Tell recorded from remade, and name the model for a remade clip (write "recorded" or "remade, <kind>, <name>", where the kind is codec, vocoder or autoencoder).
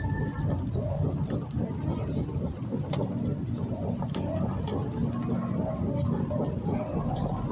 recorded